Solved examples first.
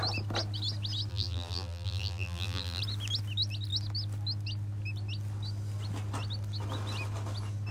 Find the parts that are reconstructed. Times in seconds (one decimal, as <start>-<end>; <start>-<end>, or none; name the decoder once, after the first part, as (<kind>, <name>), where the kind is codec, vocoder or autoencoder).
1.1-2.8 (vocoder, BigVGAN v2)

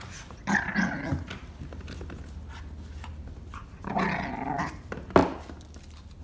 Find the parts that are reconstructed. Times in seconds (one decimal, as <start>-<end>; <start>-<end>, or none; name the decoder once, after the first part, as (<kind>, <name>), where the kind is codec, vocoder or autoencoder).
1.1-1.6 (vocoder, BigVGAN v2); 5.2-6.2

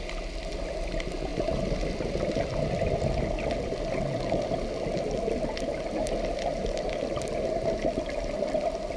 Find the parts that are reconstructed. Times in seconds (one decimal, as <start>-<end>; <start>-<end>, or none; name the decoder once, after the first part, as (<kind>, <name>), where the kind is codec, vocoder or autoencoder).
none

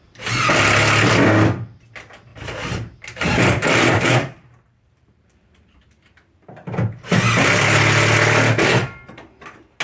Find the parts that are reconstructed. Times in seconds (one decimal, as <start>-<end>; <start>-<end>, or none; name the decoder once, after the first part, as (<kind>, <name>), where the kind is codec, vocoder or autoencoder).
2.3-5.8 (vocoder, BigVGAN v2)

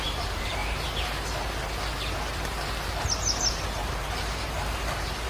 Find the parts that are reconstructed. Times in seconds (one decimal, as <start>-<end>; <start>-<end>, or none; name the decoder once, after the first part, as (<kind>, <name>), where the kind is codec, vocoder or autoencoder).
0.0-0.6 (vocoder, BigVGAN v2); 3.8-5.3